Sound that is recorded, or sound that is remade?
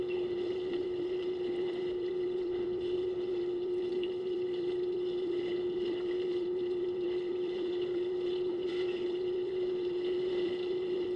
remade